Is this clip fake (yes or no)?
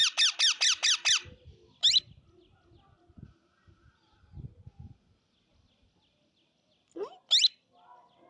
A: no